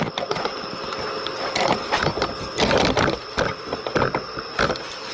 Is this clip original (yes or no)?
yes